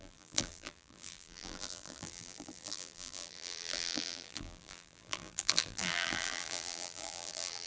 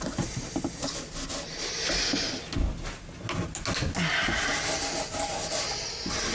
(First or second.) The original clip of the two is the second